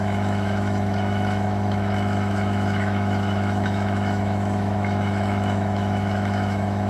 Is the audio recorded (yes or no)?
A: no